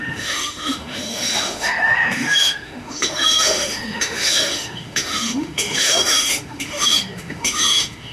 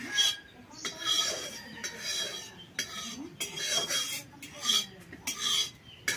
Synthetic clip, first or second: first